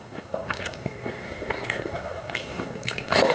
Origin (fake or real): fake